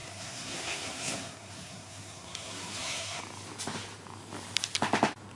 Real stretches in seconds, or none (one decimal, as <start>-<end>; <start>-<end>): 3.2-5.4